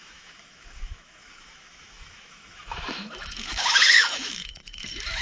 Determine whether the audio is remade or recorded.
remade